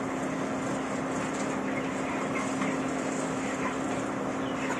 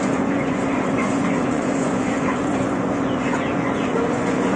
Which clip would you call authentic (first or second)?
first